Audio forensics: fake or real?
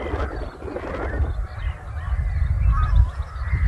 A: real